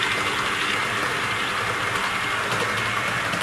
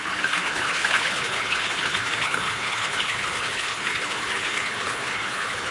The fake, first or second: second